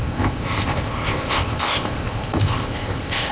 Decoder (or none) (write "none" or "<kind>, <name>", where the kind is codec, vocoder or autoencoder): codec, ZipCodec